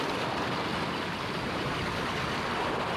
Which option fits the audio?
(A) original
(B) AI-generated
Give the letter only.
A